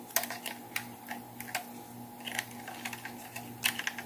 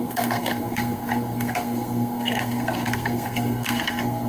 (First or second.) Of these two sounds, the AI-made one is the second